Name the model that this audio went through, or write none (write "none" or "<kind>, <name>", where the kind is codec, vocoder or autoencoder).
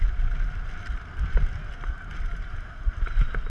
none